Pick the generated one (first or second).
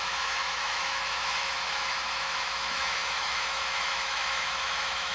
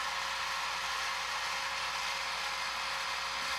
first